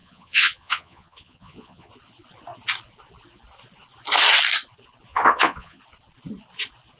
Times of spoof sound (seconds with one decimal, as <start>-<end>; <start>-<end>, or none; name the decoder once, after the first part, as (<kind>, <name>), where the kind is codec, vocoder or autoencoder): 0.0-1.9 (vocoder, Vocos); 5.1-5.8

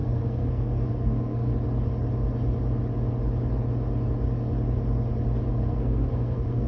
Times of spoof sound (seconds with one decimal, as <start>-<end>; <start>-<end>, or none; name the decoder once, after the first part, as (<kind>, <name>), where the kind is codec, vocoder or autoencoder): 0.0-1.5 (codec, SNAC); 5.5-6.7

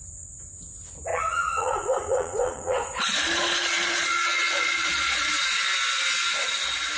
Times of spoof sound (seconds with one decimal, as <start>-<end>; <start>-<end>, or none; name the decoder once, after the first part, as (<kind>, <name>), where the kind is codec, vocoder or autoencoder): 1.1-5.3 (vocoder, Vocos)

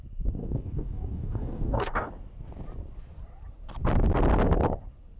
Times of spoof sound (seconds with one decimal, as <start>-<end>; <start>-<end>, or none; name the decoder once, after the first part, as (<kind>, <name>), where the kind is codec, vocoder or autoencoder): 0.4-2.1 (codec, DAC)